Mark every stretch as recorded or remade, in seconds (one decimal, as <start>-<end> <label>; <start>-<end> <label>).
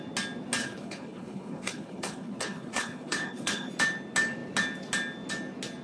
0.0-0.6 recorded; 0.6-3.7 remade; 3.7-5.8 recorded